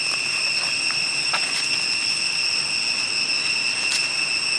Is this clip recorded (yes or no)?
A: yes